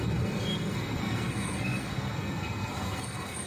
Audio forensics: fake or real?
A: fake